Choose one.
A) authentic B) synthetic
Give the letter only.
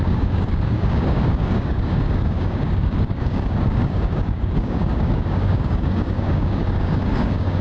B